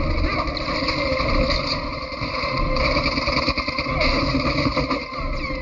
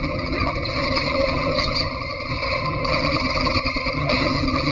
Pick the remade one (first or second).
second